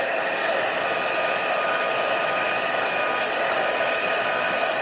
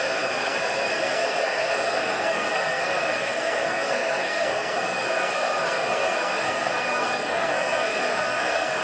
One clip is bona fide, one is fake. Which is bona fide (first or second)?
first